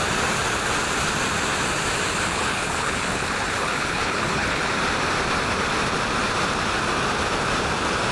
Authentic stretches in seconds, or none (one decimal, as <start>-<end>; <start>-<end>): 0.0-2.3; 4.7-8.1